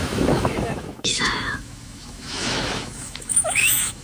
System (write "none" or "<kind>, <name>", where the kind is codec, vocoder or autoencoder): autoencoder, DAC-VAE